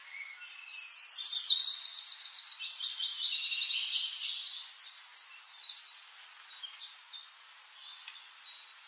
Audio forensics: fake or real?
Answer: real